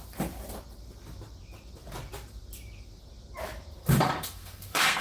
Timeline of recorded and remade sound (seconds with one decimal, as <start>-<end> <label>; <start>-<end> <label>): 0.0-3.8 recorded; 3.8-5.0 remade

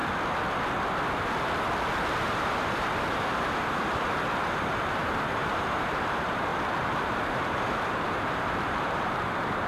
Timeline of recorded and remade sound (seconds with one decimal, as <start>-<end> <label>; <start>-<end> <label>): 0.0-2.3 recorded; 2.3-9.7 remade

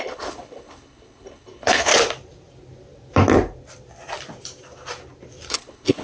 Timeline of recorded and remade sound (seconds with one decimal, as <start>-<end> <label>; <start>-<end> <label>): 0.0-1.9 remade; 1.9-5.5 recorded; 5.5-6.0 remade

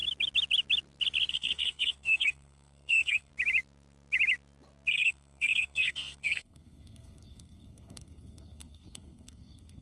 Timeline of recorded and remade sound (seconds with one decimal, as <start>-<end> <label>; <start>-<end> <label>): 0.0-1.3 recorded; 1.3-3.3 remade; 3.3-4.9 recorded; 4.9-9.8 remade

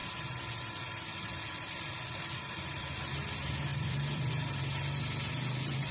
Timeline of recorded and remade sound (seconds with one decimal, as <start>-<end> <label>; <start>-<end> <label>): 0.0-3.1 remade; 3.1-3.7 recorded; 3.7-4.3 remade; 4.3-5.9 recorded

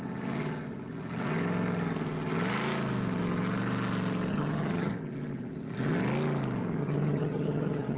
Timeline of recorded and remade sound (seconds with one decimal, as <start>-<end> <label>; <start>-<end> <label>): 0.0-4.3 recorded; 4.3-4.9 remade; 4.9-6.8 recorded; 6.8-8.0 remade